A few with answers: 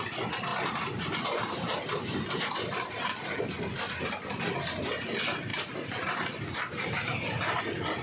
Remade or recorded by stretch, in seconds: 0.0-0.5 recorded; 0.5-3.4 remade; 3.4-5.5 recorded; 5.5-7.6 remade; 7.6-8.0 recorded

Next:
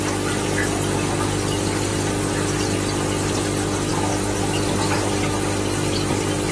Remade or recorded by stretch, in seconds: 0.0-6.5 recorded

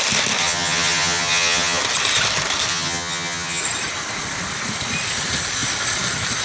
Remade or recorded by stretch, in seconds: 0.0-0.4 recorded; 0.4-1.8 remade; 1.8-2.7 recorded; 2.7-3.6 remade; 3.6-6.4 recorded

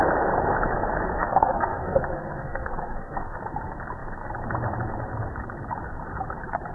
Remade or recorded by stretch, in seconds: 0.0-1.2 recorded; 1.2-3.4 remade; 3.4-6.7 recorded

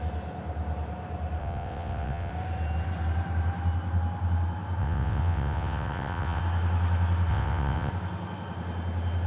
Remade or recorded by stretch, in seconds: 0.0-1.4 recorded; 1.4-2.3 remade; 2.3-4.8 recorded; 4.8-6.4 remade; 6.4-7.3 recorded; 7.3-7.9 remade; 7.9-9.3 recorded